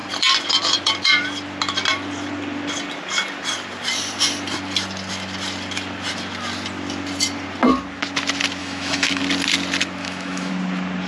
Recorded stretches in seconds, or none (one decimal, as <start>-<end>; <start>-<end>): 0.0-8.6; 9.2-10.0; 10.5-11.1